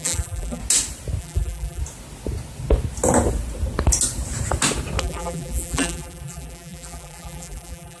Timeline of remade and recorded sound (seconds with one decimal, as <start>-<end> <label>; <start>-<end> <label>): 0.0-0.6 remade; 0.6-1.2 recorded; 1.2-1.8 remade; 1.8-5.0 recorded; 5.0-8.0 remade